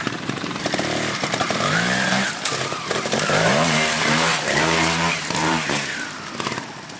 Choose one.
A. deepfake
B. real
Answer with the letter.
A